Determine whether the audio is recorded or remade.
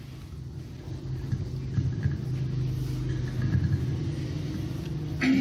recorded